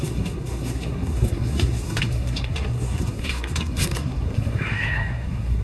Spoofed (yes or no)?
yes